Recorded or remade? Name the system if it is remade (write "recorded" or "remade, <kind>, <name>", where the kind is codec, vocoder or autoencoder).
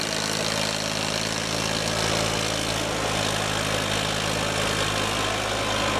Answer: recorded